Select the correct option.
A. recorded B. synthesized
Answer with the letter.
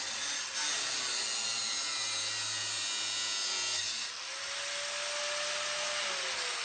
A